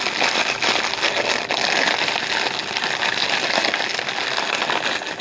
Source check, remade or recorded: recorded